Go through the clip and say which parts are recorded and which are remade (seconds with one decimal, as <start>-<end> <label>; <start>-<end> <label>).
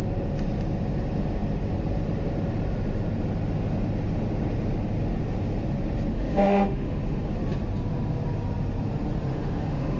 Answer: 0.0-6.1 recorded; 6.1-7.3 remade; 7.3-9.3 recorded; 9.3-10.0 remade